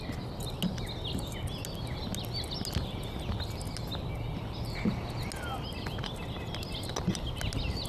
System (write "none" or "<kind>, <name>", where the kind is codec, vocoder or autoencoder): none